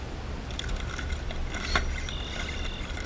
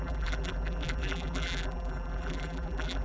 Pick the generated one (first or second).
second